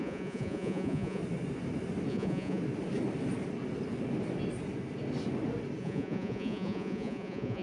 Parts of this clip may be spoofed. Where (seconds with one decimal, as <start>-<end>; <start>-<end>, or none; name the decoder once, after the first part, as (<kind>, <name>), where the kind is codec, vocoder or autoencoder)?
0.0-1.2 (vocoder, Vocos); 2.1-2.6; 5.8-7.6

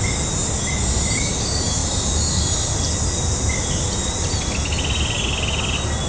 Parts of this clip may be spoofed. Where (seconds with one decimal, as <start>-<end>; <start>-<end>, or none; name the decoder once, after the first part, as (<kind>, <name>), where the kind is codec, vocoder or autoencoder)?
none

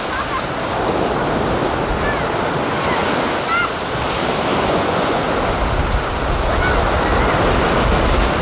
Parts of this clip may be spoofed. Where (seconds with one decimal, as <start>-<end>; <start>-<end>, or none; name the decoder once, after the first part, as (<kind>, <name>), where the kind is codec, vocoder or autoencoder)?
4.5-5.2 (vocoder, Vocos)

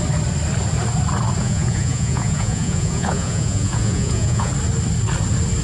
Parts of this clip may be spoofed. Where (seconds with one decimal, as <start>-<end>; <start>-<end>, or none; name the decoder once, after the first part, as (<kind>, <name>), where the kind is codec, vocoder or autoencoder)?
1.4-4.5 (vocoder, Vocos)

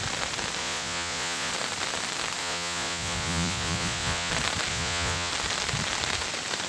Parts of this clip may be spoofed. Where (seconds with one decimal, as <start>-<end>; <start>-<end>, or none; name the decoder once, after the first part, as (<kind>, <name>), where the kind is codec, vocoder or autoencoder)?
0.6-1.5 (vocoder, Vocos); 2.4-4.3; 4.7-5.3

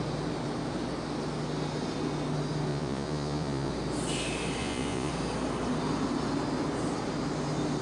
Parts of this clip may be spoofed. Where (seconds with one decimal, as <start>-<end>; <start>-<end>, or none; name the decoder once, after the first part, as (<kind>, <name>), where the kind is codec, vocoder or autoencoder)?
2.7-3.7 (vocoder, Vocos); 4.6-5.1